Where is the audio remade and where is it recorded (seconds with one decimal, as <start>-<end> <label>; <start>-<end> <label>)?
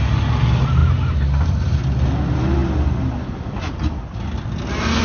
0.0-5.0 recorded